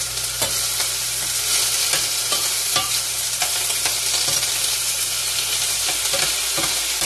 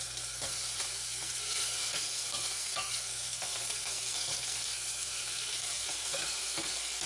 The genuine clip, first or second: first